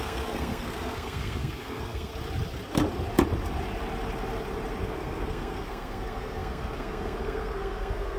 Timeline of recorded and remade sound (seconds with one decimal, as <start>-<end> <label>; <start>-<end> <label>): 0.0-2.1 remade; 2.1-4.8 recorded; 4.8-8.2 remade